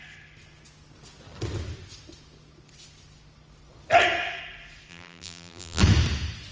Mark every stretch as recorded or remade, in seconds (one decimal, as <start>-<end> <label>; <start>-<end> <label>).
0.0-4.9 recorded; 4.9-5.8 remade; 5.8-6.5 recorded